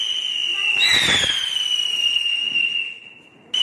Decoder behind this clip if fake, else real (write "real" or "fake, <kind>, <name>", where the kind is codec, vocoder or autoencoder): real